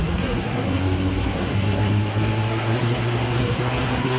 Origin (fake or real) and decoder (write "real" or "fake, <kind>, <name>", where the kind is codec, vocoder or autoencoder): fake, codec, SNAC